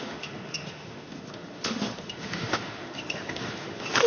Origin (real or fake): fake